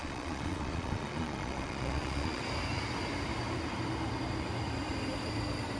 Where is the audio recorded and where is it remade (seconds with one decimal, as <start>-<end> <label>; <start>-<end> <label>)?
0.0-2.4 remade; 2.4-5.8 recorded